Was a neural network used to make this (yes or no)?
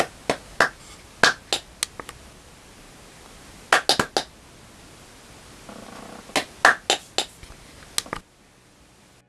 no